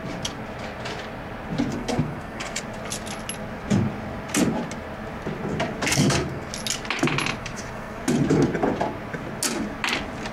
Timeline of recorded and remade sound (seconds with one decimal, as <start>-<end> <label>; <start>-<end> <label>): 0.0-1.7 recorded; 1.7-2.6 remade; 2.6-6.0 recorded; 6.0-6.5 remade; 6.5-7.4 recorded; 7.4-8.0 remade; 8.0-10.3 recorded